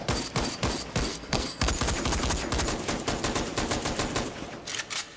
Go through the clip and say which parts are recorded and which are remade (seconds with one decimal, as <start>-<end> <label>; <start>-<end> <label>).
0.0-1.1 recorded; 1.1-1.7 remade; 1.7-5.2 recorded